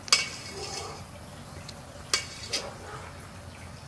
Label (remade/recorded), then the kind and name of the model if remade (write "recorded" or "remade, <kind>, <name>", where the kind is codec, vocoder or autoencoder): recorded